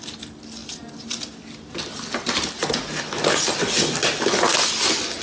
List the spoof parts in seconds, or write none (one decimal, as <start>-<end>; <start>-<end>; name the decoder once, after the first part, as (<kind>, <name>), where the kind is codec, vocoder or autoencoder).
none

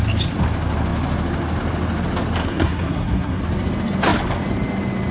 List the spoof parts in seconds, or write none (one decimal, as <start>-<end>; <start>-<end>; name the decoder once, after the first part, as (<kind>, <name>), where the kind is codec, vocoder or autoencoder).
2.4-3.4 (codec, SNAC)

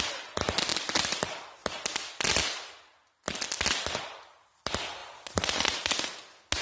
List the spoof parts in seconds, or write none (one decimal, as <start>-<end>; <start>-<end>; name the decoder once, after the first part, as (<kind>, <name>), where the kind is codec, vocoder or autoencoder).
0.7-1.2 (vocoder, BigVGAN v2); 5.0-6.0

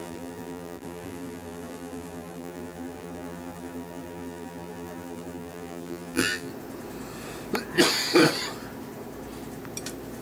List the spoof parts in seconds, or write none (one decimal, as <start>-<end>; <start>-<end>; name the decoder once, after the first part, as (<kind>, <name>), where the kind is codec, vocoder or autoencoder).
0.0-6.5 (vocoder, BigVGAN v2)